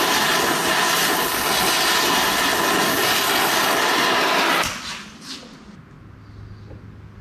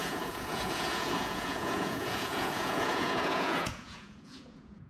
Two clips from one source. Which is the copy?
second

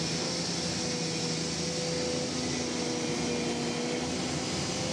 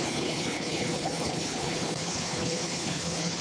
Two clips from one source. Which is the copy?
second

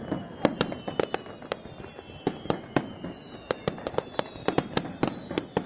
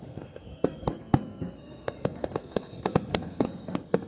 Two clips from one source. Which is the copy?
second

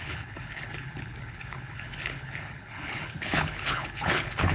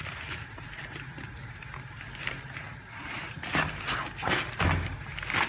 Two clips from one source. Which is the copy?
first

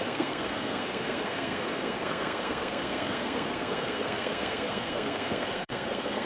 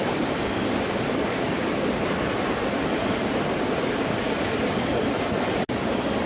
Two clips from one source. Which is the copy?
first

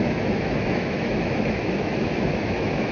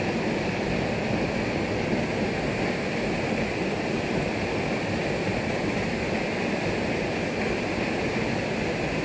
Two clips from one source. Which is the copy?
first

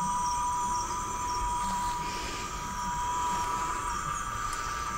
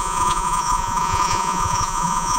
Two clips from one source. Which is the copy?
second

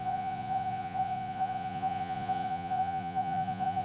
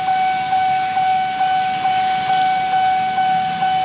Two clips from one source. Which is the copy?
first